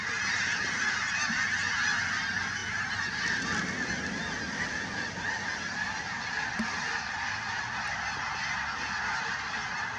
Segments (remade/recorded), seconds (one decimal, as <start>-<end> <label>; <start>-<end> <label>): 0.0-10.0 recorded